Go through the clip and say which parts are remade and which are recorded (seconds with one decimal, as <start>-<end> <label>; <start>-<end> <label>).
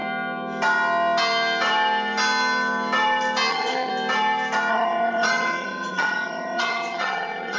0.0-3.5 recorded; 3.5-3.9 remade; 3.9-4.7 recorded; 4.7-7.6 remade